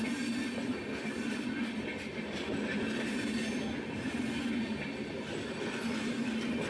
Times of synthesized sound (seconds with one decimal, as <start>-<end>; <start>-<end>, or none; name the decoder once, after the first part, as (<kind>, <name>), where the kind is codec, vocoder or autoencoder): none